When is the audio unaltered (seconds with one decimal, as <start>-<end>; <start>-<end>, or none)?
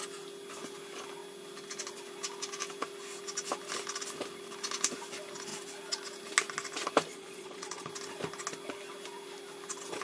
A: 0.0-7.1; 7.9-10.0